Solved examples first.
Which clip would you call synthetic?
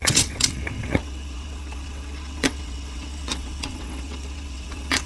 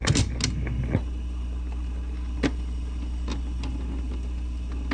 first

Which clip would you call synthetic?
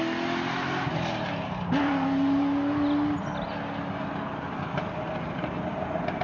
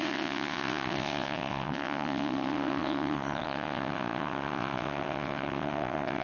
second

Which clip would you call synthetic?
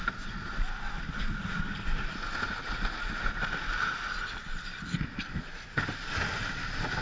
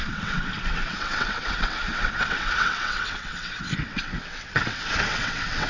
second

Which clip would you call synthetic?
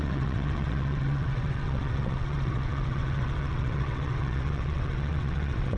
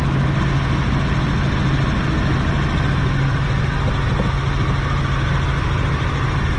first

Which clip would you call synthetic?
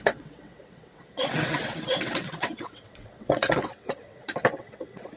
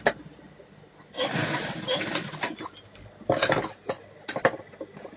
first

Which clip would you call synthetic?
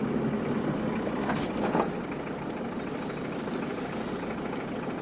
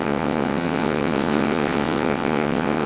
second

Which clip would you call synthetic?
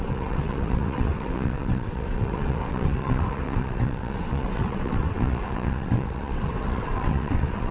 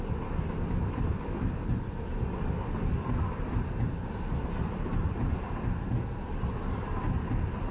first